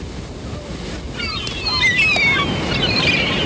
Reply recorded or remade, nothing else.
recorded